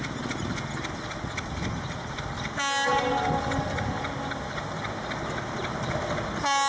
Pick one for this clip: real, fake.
real